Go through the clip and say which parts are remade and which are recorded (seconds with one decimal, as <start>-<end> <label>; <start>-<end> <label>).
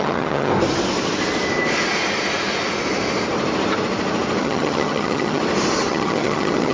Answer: 0.0-0.5 remade; 0.5-4.4 recorded; 4.4-5.4 remade; 5.4-5.9 recorded; 5.9-6.7 remade